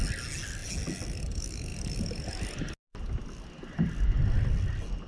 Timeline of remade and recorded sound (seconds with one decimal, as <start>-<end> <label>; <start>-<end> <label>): 0.0-5.1 recorded